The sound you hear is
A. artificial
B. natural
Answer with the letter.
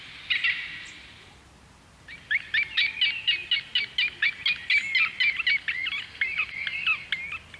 B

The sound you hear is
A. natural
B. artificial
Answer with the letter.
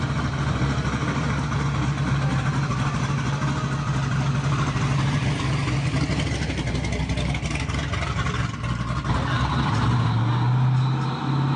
A